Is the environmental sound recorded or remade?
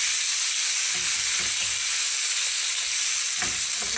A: recorded